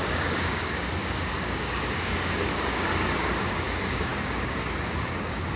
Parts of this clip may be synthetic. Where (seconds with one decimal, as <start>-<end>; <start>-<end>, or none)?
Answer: 0.0-5.6